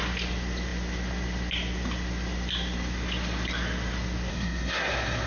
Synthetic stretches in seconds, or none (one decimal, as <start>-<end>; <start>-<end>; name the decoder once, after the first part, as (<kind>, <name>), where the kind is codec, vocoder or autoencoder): 4.3-5.3 (codec, SNAC)